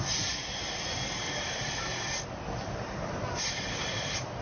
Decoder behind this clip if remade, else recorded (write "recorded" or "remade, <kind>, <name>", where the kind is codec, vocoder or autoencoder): recorded